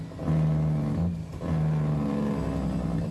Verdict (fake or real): real